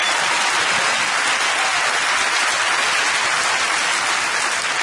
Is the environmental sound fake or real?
real